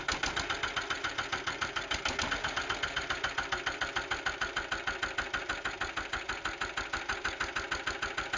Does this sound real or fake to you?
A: real